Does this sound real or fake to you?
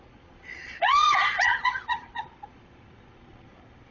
fake